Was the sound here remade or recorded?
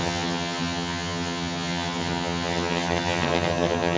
remade